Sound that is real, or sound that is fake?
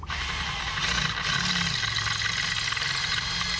real